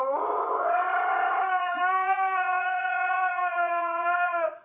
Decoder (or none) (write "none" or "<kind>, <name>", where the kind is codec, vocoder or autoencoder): vocoder, Vocos